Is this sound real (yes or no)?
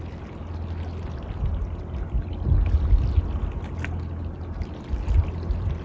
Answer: yes